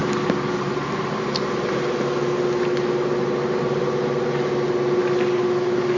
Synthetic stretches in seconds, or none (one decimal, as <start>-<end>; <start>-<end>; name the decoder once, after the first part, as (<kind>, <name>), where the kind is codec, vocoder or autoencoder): none